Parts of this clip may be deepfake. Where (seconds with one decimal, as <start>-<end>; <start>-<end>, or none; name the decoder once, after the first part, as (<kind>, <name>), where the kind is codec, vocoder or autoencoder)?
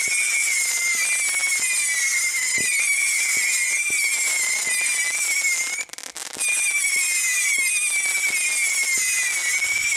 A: none